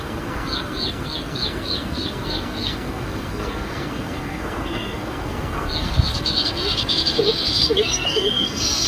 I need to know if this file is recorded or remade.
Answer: remade